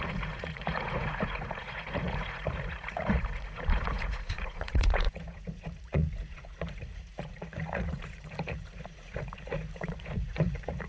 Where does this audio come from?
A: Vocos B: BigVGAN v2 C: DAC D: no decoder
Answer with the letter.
A